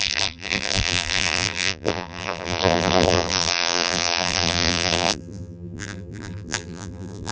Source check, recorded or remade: remade